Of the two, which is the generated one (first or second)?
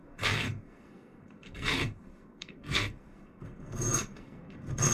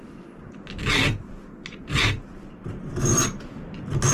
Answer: first